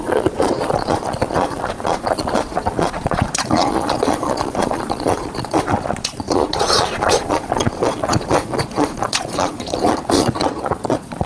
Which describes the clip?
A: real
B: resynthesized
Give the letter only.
B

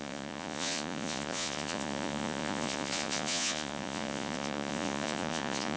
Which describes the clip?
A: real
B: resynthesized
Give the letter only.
B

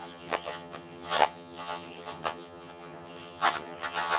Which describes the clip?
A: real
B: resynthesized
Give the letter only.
B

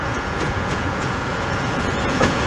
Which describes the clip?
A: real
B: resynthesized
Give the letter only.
B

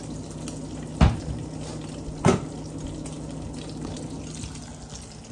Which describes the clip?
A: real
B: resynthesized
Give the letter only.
A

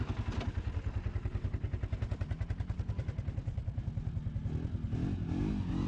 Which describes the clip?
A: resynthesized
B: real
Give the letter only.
B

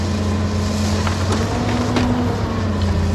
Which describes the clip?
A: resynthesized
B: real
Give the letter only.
B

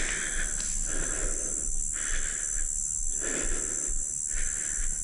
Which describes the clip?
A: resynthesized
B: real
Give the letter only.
B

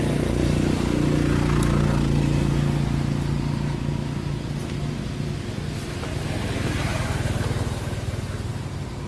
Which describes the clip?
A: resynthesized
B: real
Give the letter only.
B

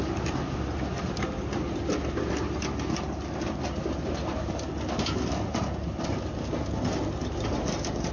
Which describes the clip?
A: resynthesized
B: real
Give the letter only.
B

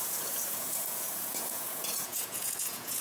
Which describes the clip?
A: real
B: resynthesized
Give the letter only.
B